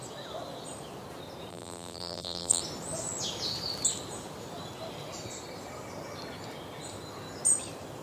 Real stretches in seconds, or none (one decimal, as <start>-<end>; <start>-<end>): 0.0-1.5; 2.6-8.0